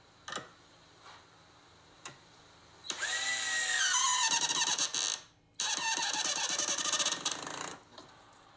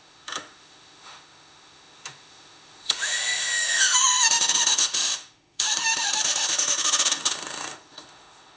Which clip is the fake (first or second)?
second